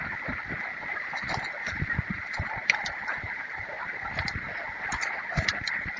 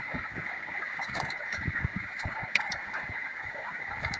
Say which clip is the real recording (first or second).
first